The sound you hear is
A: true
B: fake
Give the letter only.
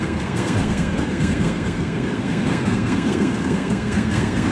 B